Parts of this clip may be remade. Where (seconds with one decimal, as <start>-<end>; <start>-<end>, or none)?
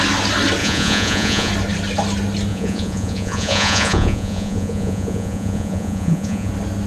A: 0.6-1.5; 2.5-6.5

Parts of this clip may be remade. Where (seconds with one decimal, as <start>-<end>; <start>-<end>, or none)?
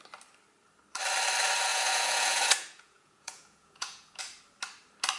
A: 1.7-4.2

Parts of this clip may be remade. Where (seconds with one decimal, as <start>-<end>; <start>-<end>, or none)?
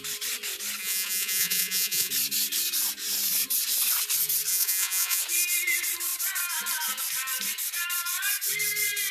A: 0.8-2.1; 4.5-5.2